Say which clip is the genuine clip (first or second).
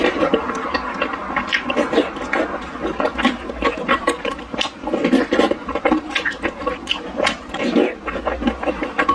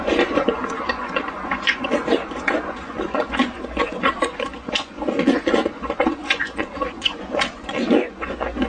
first